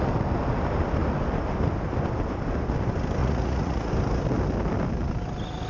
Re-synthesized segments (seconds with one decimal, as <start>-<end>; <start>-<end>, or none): 3.2-3.9